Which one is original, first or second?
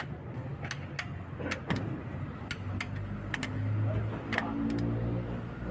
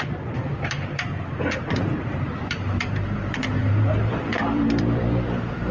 first